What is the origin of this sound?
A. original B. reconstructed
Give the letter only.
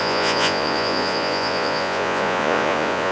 B